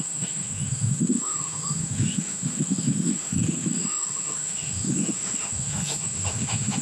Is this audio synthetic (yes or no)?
yes